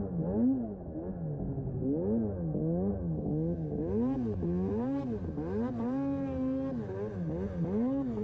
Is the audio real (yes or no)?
yes